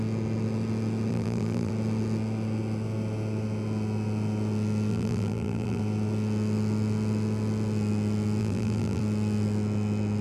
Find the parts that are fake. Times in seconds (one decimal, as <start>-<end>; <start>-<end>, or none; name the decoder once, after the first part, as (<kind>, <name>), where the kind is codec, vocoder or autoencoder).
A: 1.1-1.7 (vocoder, BigVGAN v2); 4.9-5.8; 8.4-9.0